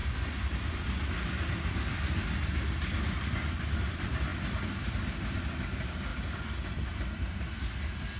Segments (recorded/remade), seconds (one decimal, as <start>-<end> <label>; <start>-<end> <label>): 0.0-8.2 recorded